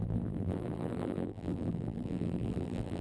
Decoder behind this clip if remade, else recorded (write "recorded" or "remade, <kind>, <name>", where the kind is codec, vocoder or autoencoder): remade, vocoder, BigVGAN v2